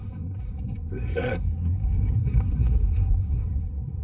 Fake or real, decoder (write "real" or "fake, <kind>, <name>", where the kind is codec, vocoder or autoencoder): fake, codec, SNAC